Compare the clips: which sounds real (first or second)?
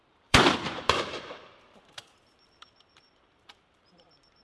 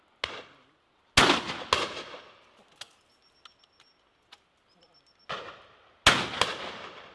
second